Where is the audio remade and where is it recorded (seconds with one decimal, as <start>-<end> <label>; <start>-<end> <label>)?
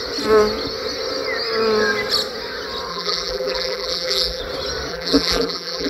0.0-2.9 recorded; 2.9-4.4 remade; 4.4-4.9 recorded; 4.9-5.9 remade